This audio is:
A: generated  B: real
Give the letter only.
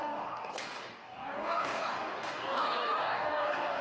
A